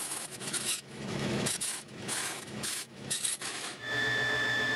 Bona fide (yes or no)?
no